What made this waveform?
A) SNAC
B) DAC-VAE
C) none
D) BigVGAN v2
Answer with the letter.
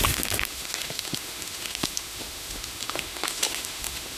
B